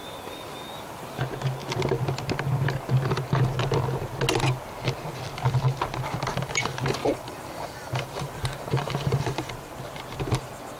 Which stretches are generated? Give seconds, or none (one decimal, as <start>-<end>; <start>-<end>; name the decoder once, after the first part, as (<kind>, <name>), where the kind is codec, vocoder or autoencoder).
0.0-1.2 (vocoder, BigVGAN v2); 6.3-9.5